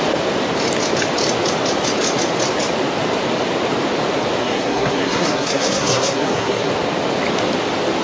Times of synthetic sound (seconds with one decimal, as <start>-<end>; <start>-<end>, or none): 4.4-6.7